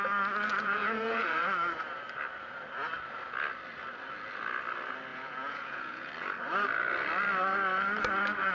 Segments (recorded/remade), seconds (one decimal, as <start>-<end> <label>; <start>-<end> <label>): 0.0-0.5 recorded; 0.5-1.4 remade; 1.4-5.1 recorded; 5.1-6.1 remade; 6.1-8.5 recorded